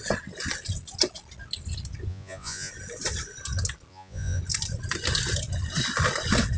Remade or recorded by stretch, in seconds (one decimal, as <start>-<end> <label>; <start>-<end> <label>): 0.0-2.1 recorded; 2.1-2.7 remade; 2.7-3.9 recorded; 3.9-4.4 remade; 4.4-6.6 recorded